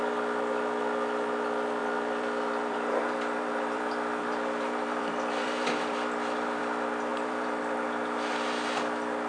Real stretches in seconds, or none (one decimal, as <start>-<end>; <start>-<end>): 0.0-1.8; 6.6-7.1; 7.6-9.3